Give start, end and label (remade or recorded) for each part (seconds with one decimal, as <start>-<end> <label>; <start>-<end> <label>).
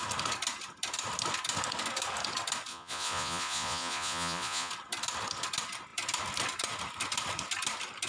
0.0-2.7 recorded; 2.7-4.7 remade; 4.7-8.1 recorded